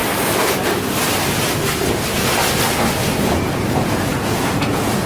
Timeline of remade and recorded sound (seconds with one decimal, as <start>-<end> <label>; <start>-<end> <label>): 0.0-3.1 recorded; 3.1-5.1 remade